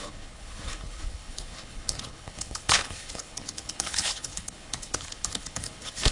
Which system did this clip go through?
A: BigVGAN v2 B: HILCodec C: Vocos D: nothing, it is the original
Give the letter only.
B